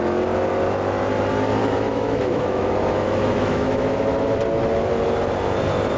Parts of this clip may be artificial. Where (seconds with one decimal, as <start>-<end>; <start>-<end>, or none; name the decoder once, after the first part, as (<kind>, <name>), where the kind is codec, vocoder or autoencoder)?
1.6-4.0 (autoencoder, DAC-VAE)